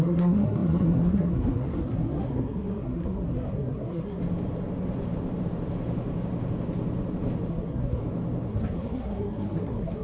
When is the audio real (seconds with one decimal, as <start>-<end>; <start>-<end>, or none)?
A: 4.2-7.5; 8.0-8.5